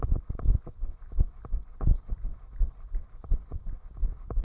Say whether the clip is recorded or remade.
recorded